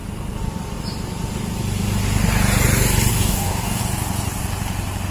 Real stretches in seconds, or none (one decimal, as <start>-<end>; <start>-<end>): 0.0-3.1; 3.8-5.1